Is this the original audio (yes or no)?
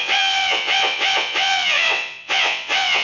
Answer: no